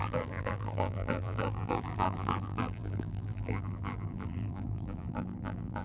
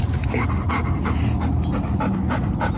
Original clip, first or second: second